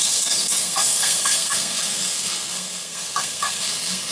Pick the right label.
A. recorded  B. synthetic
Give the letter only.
B